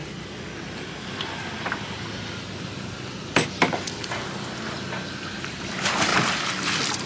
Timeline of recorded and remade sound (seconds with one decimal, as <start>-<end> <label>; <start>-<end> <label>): 0.0-7.1 recorded